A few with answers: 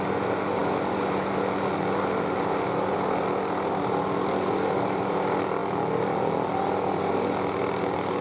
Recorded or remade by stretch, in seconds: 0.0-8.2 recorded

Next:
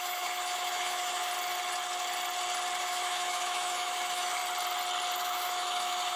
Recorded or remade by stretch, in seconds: 0.0-1.3 remade; 1.3-2.8 recorded; 2.8-4.4 remade; 4.4-5.2 recorded; 5.2-6.2 remade

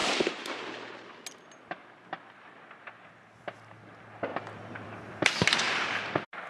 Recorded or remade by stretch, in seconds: 0.0-4.3 recorded; 4.3-5.3 remade; 5.3-6.5 recorded

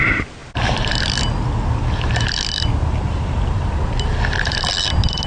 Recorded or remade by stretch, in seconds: 0.0-5.3 recorded

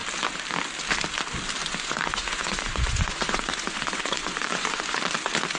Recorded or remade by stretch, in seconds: 0.0-1.6 recorded; 1.6-5.0 remade; 5.0-5.6 recorded

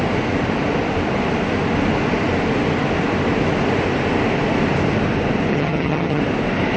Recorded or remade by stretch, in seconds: 0.0-5.5 recorded; 5.5-6.2 remade; 6.2-6.8 recorded

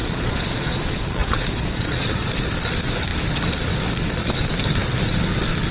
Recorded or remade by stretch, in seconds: 0.0-2.3 remade; 2.3-5.7 recorded